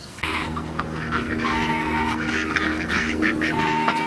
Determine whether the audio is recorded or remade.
remade